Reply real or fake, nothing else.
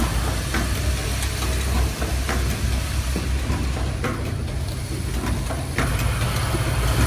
real